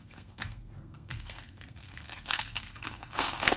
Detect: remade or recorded remade